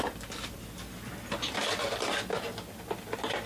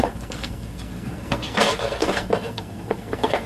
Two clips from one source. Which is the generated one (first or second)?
second